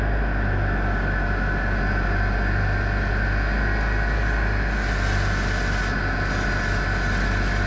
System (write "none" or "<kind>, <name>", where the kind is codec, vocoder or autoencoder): none